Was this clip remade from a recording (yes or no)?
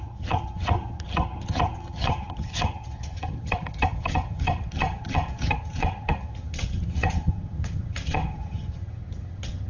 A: yes